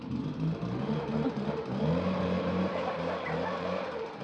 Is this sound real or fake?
fake